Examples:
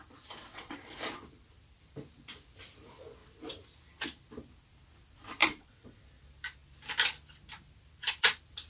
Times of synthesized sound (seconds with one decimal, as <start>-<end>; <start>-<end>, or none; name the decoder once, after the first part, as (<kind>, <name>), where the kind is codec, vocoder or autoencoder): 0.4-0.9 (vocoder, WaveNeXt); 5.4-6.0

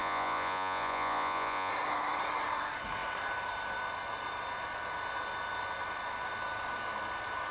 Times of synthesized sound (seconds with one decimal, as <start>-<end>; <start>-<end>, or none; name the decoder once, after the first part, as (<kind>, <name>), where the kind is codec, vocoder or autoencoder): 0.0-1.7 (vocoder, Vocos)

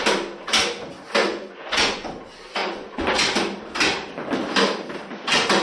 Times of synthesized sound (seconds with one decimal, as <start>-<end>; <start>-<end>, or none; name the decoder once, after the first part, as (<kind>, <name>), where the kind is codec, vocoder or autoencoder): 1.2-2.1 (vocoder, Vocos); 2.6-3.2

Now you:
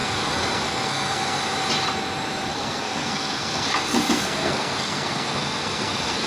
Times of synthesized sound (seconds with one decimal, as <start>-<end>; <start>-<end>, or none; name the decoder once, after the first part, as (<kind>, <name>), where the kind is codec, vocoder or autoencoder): 0.0-1.4 (codec, SNAC); 2.5-6.3